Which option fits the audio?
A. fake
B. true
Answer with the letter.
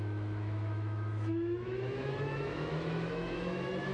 A